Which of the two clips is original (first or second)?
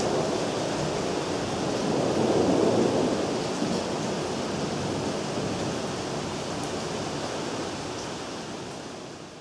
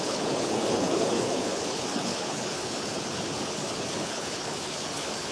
first